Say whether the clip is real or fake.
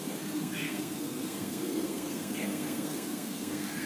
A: fake